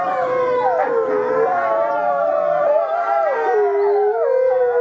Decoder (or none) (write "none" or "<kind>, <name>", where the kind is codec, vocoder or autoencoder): none